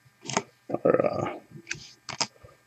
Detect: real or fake real